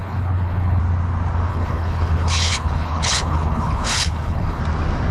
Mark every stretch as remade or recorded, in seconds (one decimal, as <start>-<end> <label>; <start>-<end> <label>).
0.0-0.8 remade; 0.8-1.5 recorded; 1.5-4.6 remade; 4.6-5.1 recorded